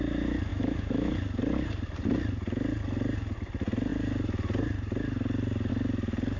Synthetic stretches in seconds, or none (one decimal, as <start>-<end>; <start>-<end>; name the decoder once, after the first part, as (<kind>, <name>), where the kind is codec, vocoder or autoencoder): 0.5-1.1 (autoencoder, DAC-VAE)